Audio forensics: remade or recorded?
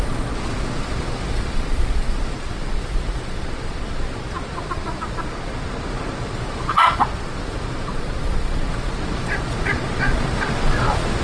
remade